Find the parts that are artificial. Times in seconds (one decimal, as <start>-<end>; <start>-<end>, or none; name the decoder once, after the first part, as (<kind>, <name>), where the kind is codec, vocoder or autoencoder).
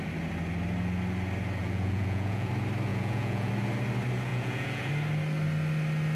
1.6-2.5 (vocoder, Vocos); 2.9-3.5; 4.3-4.9